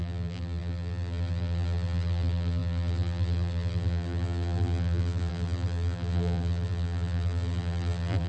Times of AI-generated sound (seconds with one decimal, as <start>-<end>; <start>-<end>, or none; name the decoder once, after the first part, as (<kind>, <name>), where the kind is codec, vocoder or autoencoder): 0.0-8.3 (vocoder, BigVGAN v2)